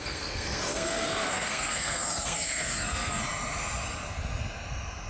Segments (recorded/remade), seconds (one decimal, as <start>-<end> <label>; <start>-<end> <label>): 0.0-3.2 remade; 3.2-5.1 recorded

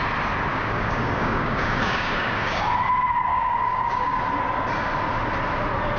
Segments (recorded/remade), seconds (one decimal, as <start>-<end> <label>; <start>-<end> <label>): 0.0-0.5 recorded; 0.5-2.6 remade; 2.6-3.3 recorded; 3.3-4.2 remade; 4.2-6.0 recorded

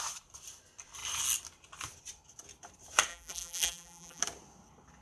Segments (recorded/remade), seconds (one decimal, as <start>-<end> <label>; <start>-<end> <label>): 0.0-3.1 recorded; 3.1-4.2 remade; 4.2-5.0 recorded

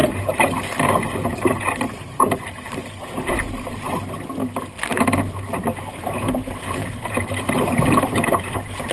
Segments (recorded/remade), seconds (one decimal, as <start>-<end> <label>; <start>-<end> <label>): 0.0-2.8 remade; 2.8-5.9 recorded; 5.9-8.9 remade

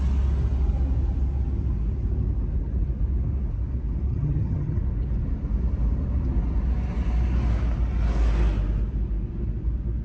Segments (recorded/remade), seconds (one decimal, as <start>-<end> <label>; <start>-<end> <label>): 0.0-4.1 recorded; 4.1-4.8 remade; 4.8-10.0 recorded

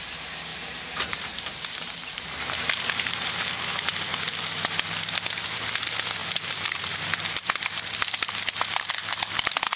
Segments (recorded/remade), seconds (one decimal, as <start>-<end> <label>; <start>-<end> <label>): 0.0-0.5 recorded; 0.5-3.5 remade; 3.5-6.2 recorded; 6.2-7.6 remade; 7.6-9.8 recorded